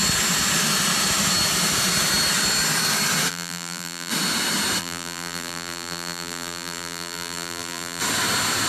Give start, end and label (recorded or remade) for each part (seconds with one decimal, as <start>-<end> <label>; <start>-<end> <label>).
0.0-3.3 recorded; 3.3-4.1 remade; 4.1-4.8 recorded; 4.8-8.0 remade; 8.0-8.7 recorded